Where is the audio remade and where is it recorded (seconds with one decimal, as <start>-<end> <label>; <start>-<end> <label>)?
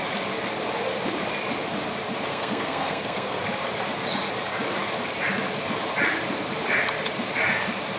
0.0-2.3 recorded; 2.3-3.4 remade; 3.4-8.0 recorded